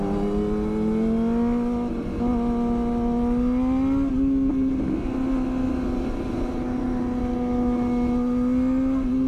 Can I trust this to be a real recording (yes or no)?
yes